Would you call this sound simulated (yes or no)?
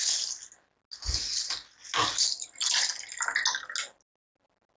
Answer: no